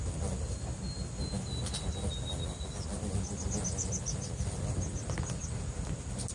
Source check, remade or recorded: recorded